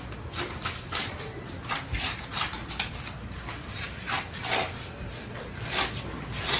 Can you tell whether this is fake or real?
real